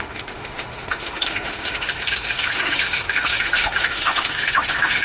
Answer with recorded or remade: remade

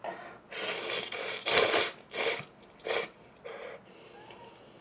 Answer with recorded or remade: recorded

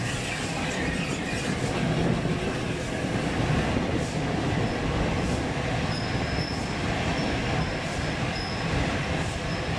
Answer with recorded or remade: recorded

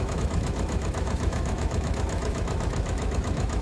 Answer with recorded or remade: remade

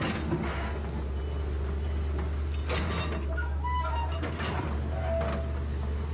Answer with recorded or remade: recorded